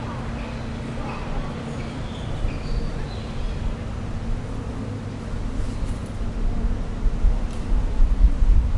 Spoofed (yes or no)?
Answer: no